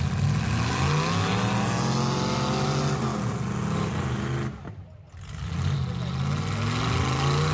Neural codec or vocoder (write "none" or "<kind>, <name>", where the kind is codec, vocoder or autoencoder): none